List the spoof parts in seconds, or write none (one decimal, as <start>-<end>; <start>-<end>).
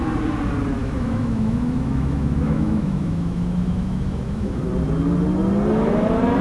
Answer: 0.8-4.6